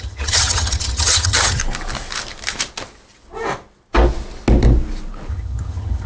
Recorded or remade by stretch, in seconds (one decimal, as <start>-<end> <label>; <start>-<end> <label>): 0.0-1.6 remade; 1.6-5.3 recorded; 5.3-6.1 remade